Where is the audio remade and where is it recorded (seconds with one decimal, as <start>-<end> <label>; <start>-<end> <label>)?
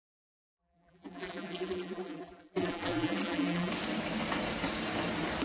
0.0-0.5 recorded; 0.5-3.7 remade; 3.7-5.4 recorded